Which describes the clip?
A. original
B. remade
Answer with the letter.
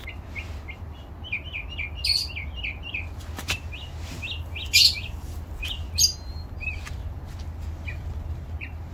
A